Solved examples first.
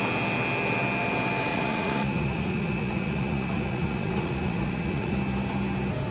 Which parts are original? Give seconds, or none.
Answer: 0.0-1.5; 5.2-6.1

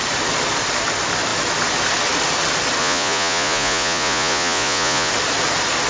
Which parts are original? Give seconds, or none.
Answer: 0.0-2.8; 5.1-5.9

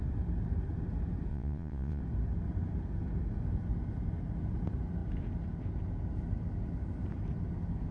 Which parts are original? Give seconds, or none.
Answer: 0.0-1.3; 2.0-7.9